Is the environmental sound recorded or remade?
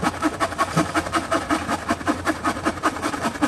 recorded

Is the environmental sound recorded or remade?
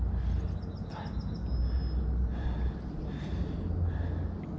recorded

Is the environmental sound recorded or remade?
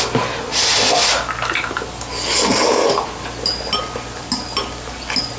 recorded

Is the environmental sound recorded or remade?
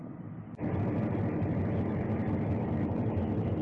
recorded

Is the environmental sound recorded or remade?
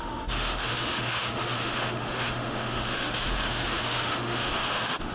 remade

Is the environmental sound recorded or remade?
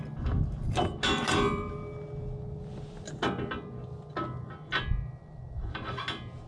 recorded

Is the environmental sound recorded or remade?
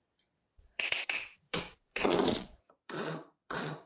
remade